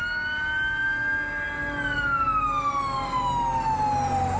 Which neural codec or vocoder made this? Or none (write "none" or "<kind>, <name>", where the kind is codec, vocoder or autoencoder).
none